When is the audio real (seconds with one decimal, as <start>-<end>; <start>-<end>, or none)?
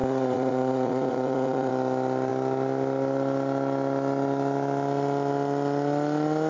1.7-6.5